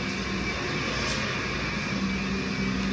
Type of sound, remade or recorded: recorded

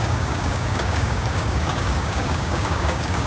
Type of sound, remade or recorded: remade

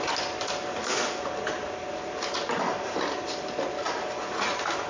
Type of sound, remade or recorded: recorded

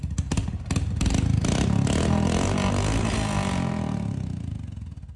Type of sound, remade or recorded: recorded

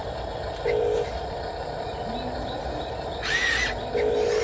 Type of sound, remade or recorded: recorded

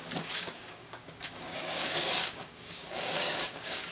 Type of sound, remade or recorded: remade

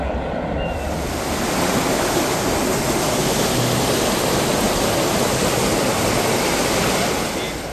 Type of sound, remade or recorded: recorded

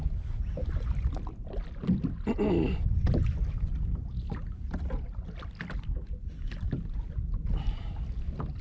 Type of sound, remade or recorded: recorded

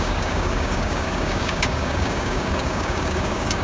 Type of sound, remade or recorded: remade